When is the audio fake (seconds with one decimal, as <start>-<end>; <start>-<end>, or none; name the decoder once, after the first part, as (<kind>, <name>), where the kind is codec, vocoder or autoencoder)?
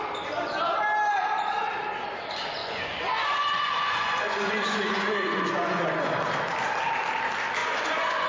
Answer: 2.6-6.1 (vocoder, Vocos); 7.6-8.3